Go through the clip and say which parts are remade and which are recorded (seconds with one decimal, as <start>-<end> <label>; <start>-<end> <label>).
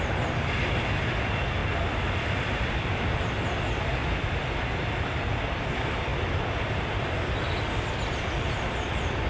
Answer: 0.0-1.6 recorded; 1.6-3.0 remade; 3.0-4.0 recorded; 4.0-4.7 remade; 4.7-9.3 recorded